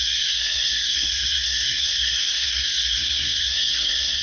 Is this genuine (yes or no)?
no